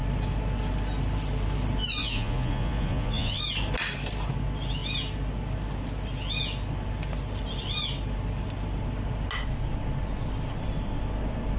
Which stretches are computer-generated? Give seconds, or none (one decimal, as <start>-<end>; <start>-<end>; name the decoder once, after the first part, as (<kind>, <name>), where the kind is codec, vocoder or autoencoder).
2.0-3.4 (vocoder, Vocos)